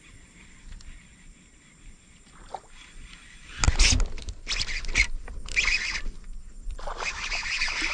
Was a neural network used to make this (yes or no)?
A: no